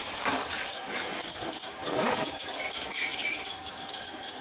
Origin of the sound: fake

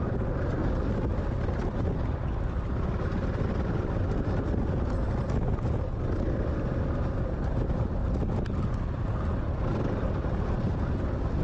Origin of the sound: real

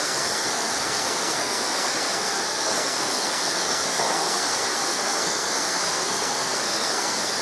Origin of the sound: fake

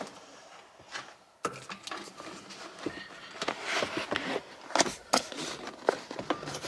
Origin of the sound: real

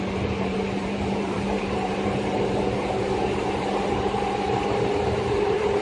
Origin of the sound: fake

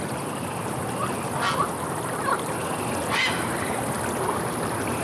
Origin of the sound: real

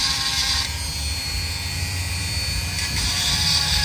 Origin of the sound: fake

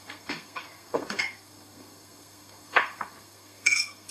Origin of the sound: fake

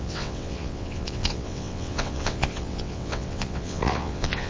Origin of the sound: fake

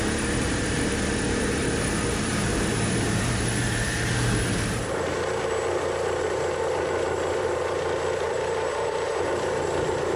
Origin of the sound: fake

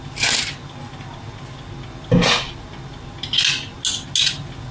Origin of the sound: real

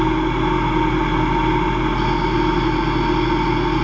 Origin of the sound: real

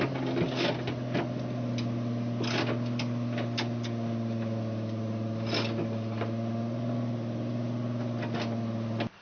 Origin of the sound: real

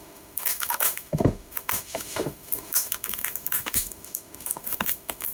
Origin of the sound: fake